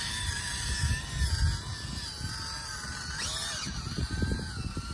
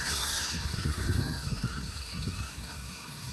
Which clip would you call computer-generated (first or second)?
second